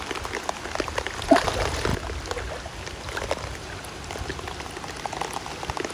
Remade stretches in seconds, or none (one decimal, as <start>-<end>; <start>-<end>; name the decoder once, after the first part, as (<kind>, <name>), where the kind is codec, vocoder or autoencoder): none